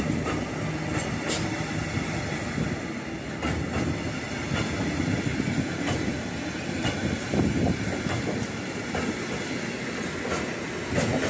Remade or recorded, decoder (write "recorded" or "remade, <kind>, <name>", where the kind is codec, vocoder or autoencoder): recorded